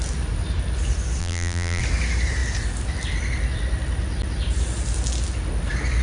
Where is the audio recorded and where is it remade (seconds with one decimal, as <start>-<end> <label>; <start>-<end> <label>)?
0.0-1.2 recorded; 1.2-1.8 remade; 1.8-6.0 recorded